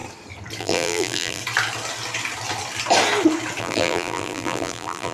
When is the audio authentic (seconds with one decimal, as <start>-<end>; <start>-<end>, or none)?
0.0-0.6; 1.4-3.6